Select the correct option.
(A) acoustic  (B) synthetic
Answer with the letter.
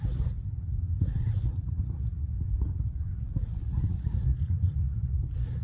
B